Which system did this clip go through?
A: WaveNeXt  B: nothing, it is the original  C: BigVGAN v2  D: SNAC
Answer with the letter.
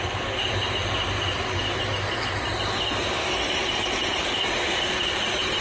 B